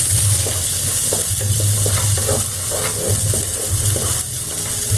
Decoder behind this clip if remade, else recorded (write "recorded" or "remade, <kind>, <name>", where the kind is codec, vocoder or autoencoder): recorded